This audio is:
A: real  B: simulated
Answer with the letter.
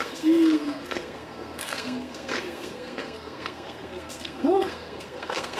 B